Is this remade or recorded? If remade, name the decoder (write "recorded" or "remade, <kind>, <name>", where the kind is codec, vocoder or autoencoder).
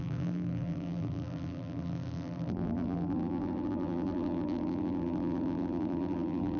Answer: remade, vocoder, BigVGAN v2